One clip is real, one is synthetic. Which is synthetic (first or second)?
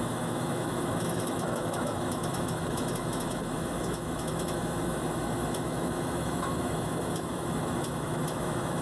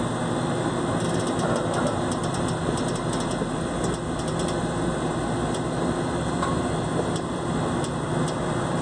first